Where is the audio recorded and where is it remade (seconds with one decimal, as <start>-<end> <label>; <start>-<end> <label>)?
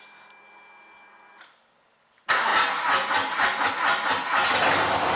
0.0-5.2 recorded